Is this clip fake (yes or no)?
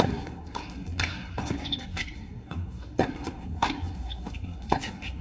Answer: yes